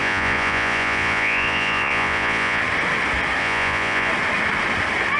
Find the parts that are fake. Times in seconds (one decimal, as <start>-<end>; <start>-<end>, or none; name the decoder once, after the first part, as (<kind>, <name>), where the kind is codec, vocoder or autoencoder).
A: 0.0-2.6 (vocoder, Vocos); 3.4-4.1